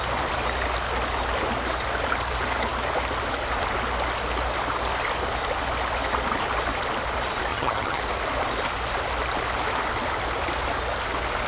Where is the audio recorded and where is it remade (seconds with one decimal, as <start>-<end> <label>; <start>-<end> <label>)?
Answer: 0.0-7.5 recorded; 7.5-8.0 remade; 8.0-11.5 recorded